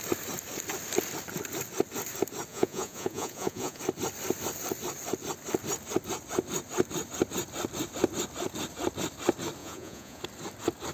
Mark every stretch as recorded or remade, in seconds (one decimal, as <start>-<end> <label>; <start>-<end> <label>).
0.0-2.5 recorded; 2.5-3.8 remade; 3.8-9.6 recorded; 9.6-10.2 remade; 10.2-10.9 recorded